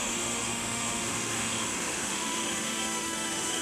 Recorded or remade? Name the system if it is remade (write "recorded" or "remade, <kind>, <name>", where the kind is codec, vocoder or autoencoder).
remade, autoencoder, DAC-VAE